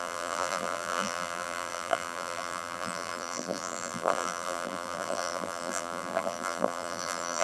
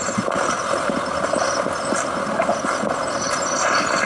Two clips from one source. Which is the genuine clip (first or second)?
second